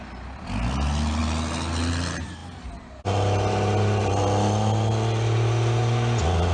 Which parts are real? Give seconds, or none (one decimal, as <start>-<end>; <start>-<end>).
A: 0.0-6.5